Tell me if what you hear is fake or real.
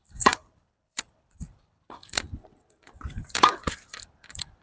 fake